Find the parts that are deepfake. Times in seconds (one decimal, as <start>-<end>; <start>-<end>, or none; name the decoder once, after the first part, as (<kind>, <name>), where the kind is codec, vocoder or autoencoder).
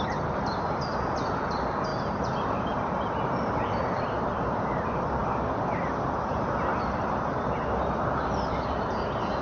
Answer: 1.9-4.0 (vocoder, BigVGAN v2); 6.7-8.8